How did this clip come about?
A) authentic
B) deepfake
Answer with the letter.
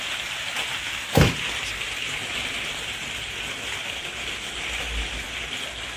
A